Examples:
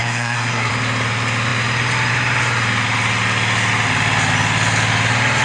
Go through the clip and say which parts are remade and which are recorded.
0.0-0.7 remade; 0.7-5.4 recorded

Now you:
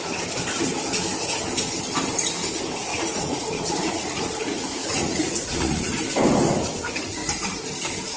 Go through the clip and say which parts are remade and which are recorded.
0.0-2.9 recorded; 2.9-5.9 remade; 5.9-8.2 recorded

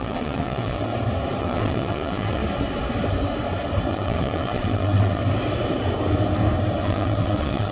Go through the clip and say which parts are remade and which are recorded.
0.0-0.9 remade; 0.9-1.4 recorded; 1.4-2.4 remade; 2.4-3.9 recorded; 3.9-5.2 remade; 5.2-6.8 recorded; 6.8-7.7 remade

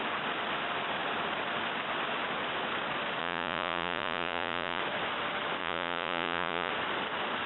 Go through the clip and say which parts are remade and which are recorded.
0.0-3.2 recorded; 3.2-4.8 remade; 4.8-5.6 recorded; 5.6-6.7 remade; 6.7-7.5 recorded

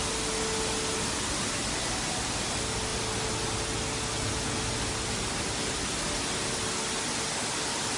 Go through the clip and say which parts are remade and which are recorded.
0.0-8.0 recorded

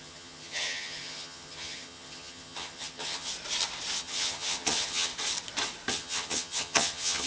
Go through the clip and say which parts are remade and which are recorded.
0.0-3.3 remade; 3.3-4.0 recorded; 4.0-5.1 remade; 5.1-5.9 recorded; 5.9-7.3 remade

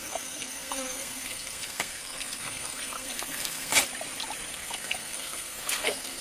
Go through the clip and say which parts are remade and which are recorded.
0.0-3.7 remade; 3.7-4.5 recorded; 4.5-6.2 remade

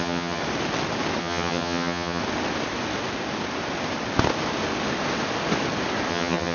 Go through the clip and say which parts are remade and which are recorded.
0.0-0.4 remade; 0.4-1.2 recorded; 1.2-2.2 remade; 2.2-6.1 recorded; 6.1-6.5 remade